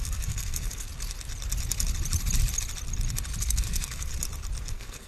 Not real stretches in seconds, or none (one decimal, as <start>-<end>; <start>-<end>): 0.0-0.9; 3.4-4.1; 4.6-5.1